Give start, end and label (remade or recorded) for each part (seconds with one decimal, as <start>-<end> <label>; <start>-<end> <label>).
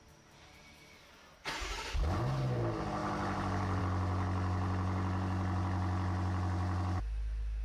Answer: 0.0-7.6 recorded